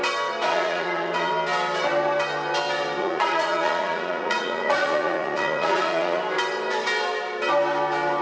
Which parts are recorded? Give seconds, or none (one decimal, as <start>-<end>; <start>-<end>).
0.0-0.5; 1.3-3.0; 6.2-8.2